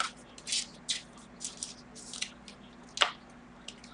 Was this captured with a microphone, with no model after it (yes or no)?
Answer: yes